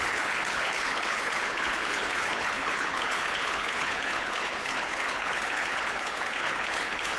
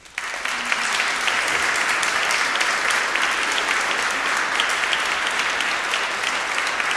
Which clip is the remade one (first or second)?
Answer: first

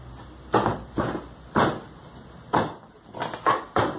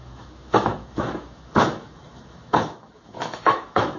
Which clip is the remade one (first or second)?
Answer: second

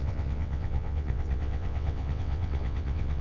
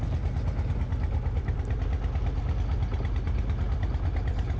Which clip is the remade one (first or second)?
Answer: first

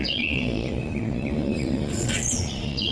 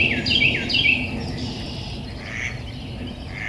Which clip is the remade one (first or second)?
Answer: first